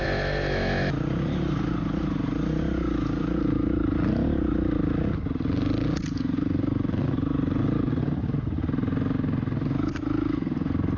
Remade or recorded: recorded